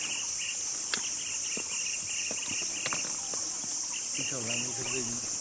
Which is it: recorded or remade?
recorded